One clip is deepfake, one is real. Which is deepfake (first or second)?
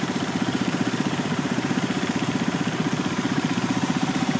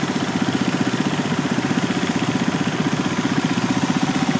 first